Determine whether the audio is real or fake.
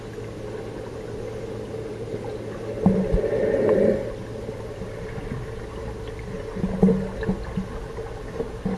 real